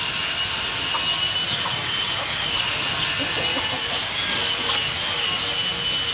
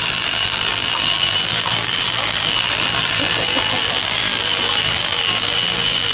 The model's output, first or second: second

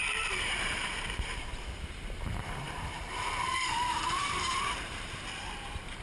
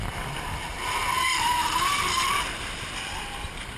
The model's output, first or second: first